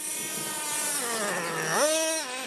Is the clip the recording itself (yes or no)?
yes